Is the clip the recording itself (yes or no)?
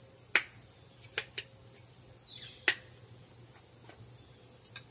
yes